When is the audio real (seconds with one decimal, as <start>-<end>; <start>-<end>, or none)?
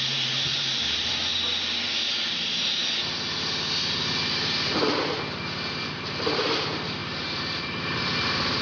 1.3-2.3; 2.8-5.8